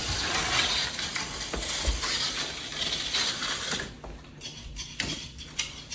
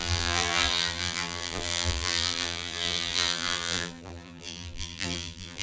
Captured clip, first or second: first